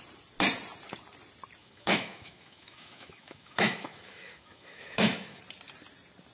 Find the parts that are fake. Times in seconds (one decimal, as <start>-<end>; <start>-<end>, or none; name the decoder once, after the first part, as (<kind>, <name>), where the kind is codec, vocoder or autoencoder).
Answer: 1.6-5.4 (autoencoder, DAC-VAE)